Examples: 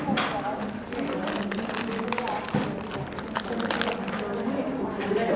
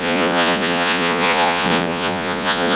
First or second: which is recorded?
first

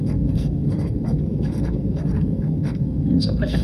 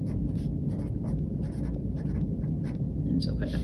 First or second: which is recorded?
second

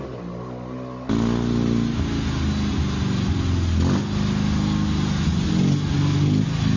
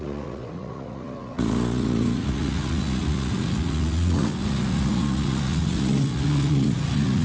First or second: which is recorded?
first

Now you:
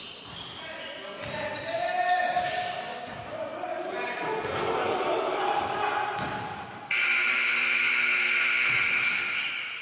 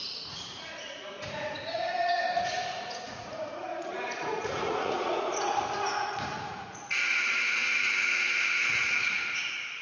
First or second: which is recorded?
first